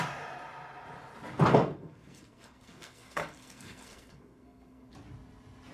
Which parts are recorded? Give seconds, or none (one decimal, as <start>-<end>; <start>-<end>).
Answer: 0.0-1.5; 4.9-5.7